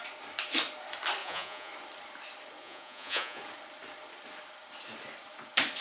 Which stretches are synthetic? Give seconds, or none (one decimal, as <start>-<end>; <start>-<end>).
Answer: 1.2-1.7; 2.6-3.4